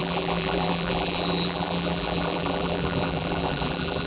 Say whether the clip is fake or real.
fake